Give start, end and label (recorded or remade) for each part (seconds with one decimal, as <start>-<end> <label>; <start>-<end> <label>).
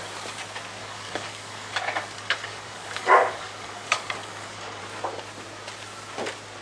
0.0-0.8 recorded; 0.8-4.8 remade; 4.8-6.6 recorded